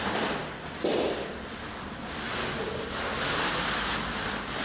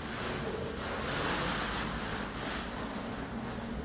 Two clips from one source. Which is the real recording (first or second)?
second